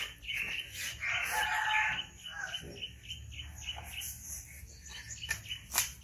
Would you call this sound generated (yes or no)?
no